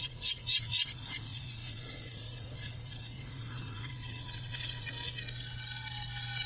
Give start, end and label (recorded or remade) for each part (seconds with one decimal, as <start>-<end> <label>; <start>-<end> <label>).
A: 0.0-4.9 remade; 4.9-6.5 recorded